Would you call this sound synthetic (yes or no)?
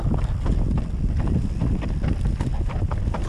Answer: no